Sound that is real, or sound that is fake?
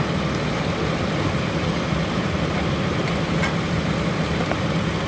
real